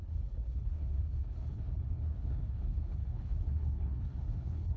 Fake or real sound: fake